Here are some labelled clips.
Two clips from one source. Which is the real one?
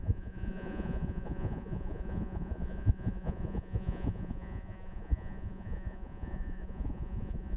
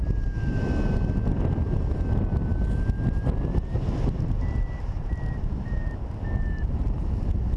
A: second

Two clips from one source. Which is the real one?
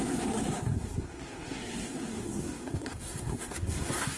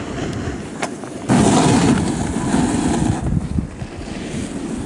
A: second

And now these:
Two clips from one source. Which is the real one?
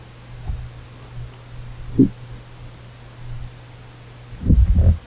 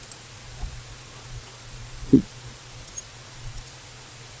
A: first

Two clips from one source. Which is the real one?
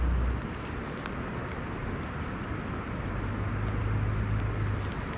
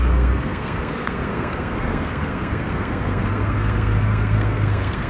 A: first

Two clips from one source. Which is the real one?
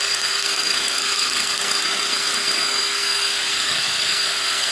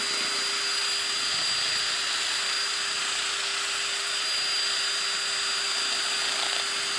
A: second